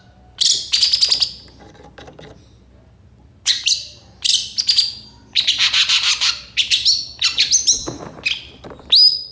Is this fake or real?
real